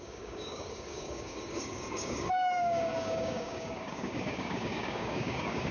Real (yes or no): no